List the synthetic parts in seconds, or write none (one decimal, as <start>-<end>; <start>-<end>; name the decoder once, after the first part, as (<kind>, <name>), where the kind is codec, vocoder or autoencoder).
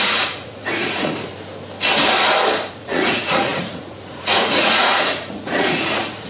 0.0-1.3 (vocoder, Vocos); 2.7-6.3